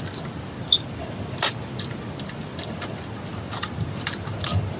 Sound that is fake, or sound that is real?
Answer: fake